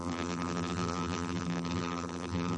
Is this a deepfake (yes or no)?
yes